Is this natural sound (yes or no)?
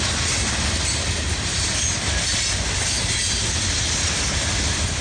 yes